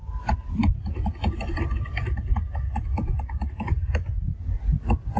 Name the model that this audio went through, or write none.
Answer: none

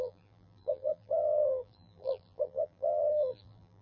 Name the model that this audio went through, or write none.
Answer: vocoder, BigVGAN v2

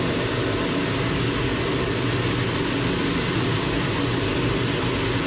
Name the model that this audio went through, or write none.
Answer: none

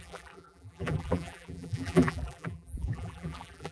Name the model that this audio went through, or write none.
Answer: vocoder, BigVGAN v2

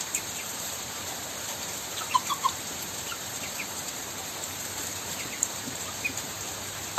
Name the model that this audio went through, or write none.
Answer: vocoder, BigVGAN v2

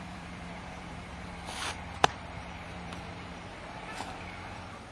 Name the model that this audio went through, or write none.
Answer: vocoder, BigVGAN v2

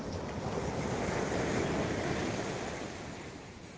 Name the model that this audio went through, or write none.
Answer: vocoder, BigVGAN v2